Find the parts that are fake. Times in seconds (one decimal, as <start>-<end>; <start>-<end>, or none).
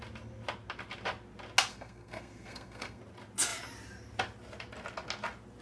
1.7-3.0